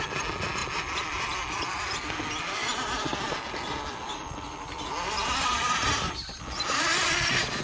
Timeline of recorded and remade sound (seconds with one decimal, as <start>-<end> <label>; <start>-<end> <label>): 0.0-7.6 recorded

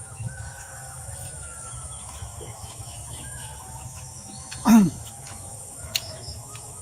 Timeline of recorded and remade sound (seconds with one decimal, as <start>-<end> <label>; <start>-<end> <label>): 0.0-6.8 remade

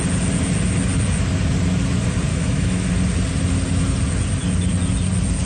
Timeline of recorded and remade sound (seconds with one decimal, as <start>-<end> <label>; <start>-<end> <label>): 0.0-2.3 recorded; 2.3-2.9 remade; 2.9-5.5 recorded

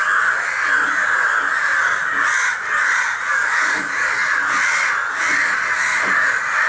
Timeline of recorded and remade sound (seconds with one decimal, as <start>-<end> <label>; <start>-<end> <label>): 0.0-3.3 recorded; 3.3-4.1 remade; 4.1-6.7 recorded